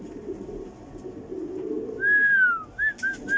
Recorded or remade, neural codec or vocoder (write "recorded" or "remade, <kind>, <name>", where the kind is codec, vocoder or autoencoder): recorded